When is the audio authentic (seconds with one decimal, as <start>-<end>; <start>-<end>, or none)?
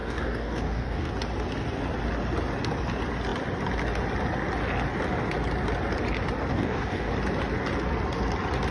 1.1-6.5; 7.1-8.7